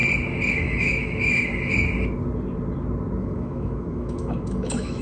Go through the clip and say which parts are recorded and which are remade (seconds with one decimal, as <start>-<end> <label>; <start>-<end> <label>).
0.0-0.5 recorded; 0.5-1.5 remade; 1.5-3.2 recorded; 3.2-5.0 remade